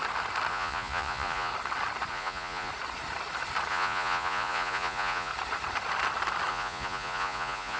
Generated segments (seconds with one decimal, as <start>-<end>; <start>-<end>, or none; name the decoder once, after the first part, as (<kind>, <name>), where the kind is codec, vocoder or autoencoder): 0.5-1.5 (vocoder, Vocos); 2.1-2.7; 3.7-5.3; 6.5-7.8